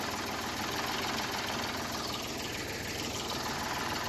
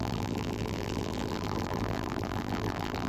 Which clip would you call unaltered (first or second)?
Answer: first